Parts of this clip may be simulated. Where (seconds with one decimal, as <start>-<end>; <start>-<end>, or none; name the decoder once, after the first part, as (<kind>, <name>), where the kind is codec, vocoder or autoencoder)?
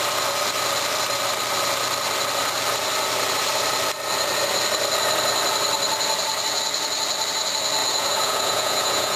7.8-9.2 (vocoder, Vocos)